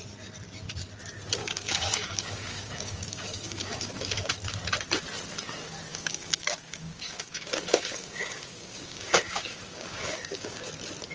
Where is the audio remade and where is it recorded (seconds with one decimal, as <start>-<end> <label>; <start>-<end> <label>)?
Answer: 0.0-1.4 recorded; 1.4-4.3 remade; 4.3-5.9 recorded; 5.9-10.7 remade; 10.7-11.1 recorded